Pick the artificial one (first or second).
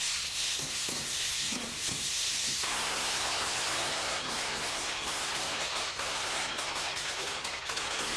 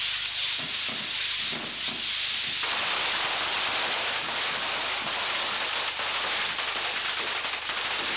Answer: first